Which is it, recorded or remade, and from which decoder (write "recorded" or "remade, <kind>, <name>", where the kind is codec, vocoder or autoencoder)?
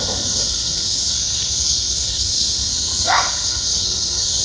remade, codec, SNAC